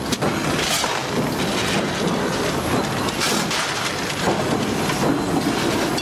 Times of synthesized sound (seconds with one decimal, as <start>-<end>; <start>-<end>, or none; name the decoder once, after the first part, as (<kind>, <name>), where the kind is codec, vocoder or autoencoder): none